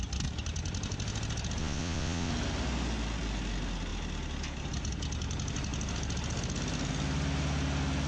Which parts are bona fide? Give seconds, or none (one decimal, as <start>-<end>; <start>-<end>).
0.0-1.6; 2.3-8.1